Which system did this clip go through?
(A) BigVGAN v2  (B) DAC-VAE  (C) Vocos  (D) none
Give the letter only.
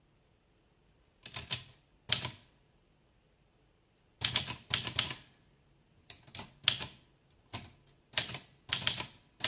D